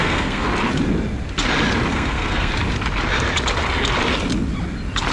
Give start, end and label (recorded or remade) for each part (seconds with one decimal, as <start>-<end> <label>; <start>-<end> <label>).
0.0-0.5 remade; 0.5-1.9 recorded; 1.9-2.5 remade; 2.5-5.1 recorded